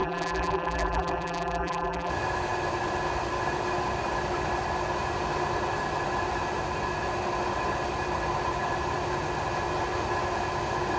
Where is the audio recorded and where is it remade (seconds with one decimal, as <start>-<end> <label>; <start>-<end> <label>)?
0.0-2.1 remade; 2.1-11.0 recorded